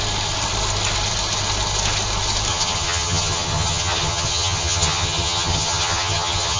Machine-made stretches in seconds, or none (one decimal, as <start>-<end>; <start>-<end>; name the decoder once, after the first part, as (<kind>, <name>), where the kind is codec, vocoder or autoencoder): 2.5-6.6 (vocoder, HiFi-GAN)